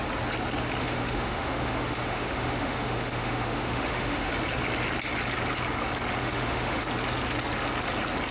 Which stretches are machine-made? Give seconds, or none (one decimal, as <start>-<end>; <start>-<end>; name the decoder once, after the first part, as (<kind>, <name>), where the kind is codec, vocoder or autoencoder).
0.8-4.3 (autoencoder, DAC-VAE); 6.2-6.8